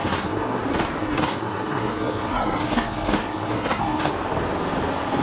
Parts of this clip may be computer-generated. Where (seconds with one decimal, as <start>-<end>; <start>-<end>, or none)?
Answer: 0.0-0.6; 1.0-4.1